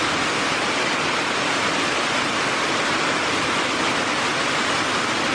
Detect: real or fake real